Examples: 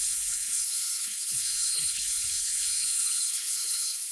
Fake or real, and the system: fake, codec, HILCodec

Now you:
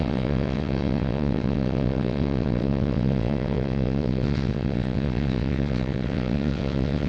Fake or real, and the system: fake, vocoder, WaveNeXt